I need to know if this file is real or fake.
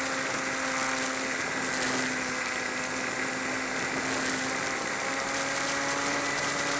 real